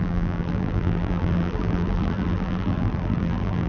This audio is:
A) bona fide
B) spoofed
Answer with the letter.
B